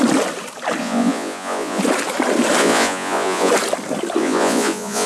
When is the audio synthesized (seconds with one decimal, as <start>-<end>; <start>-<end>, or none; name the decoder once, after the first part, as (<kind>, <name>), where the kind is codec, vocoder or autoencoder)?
0.8-1.8 (vocoder, Vocos); 2.6-3.5; 4.2-5.1